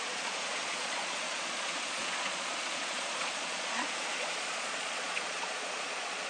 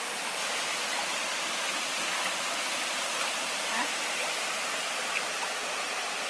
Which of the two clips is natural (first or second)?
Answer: second